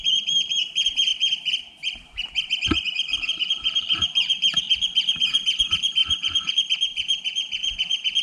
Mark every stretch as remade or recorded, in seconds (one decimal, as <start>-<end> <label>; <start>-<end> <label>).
0.0-3.6 recorded; 3.6-4.7 remade; 4.7-6.0 recorded; 6.0-6.5 remade; 6.5-8.2 recorded